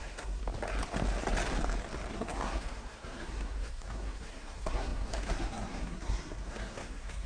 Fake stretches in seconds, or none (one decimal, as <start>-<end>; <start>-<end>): 0.0-0.4; 2.1-7.3